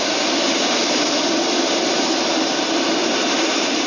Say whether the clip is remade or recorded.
remade